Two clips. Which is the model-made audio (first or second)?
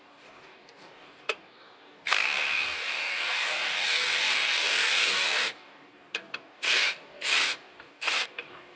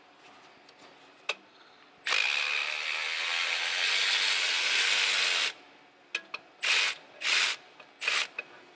first